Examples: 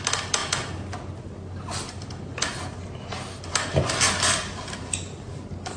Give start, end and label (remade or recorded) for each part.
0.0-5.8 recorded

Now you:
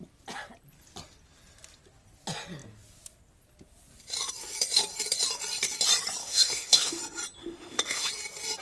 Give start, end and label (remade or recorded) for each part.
0.0-6.2 recorded; 6.2-7.0 remade; 7.0-7.4 recorded; 7.4-8.1 remade; 8.1-8.6 recorded

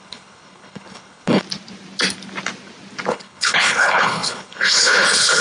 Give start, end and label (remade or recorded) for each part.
0.0-1.4 remade; 1.4-3.1 recorded; 3.1-5.4 remade

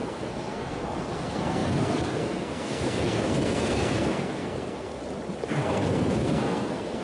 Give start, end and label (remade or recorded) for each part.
0.0-5.0 remade; 5.0-5.5 recorded; 5.5-7.0 remade

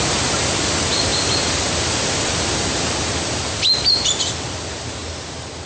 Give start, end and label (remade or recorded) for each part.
0.0-5.7 recorded

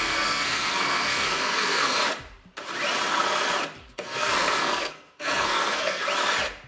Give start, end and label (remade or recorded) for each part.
0.0-2.0 remade; 2.0-3.9 recorded; 3.9-6.0 remade; 6.0-6.7 recorded